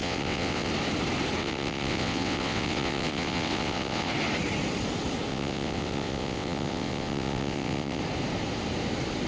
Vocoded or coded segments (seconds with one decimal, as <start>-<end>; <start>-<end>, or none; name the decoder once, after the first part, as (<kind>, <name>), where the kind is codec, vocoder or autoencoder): 0.0-0.7 (vocoder, WaveNeXt); 1.4-4.1; 5.3-8.0